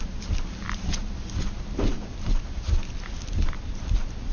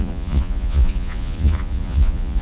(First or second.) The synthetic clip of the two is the second